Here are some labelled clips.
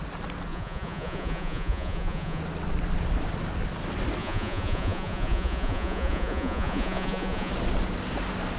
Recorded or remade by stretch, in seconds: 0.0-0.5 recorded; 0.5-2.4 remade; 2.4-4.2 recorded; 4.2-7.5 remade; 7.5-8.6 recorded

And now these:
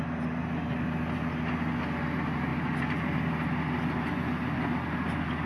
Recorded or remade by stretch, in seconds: 0.0-5.5 recorded

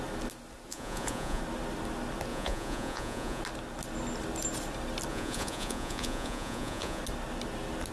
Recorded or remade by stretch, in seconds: 0.0-0.7 recorded; 0.7-1.4 remade; 1.4-2.3 recorded; 2.3-3.4 remade; 3.4-5.1 recorded; 5.1-7.0 remade; 7.0-7.9 recorded

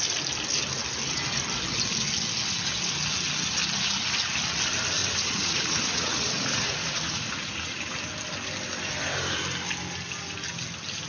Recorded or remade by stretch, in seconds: 0.0-5.0 recorded; 5.0-7.8 remade; 7.8-11.1 recorded

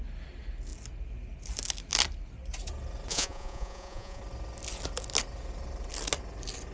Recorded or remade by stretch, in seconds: 0.0-3.1 recorded; 3.1-4.2 remade; 4.2-6.7 recorded

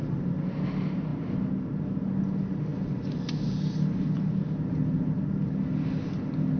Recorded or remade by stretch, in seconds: 0.0-6.6 recorded

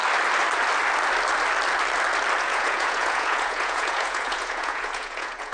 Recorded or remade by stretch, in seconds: 0.0-2.4 recorded; 2.4-5.5 remade

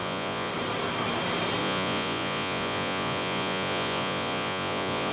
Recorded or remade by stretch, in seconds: 0.0-0.5 remade; 0.5-1.6 recorded; 1.6-5.1 remade